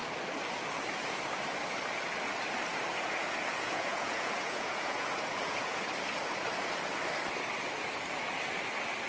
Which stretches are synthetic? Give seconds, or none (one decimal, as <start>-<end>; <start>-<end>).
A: 2.9-5.8